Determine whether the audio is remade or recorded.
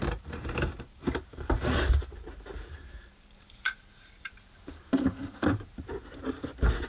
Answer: remade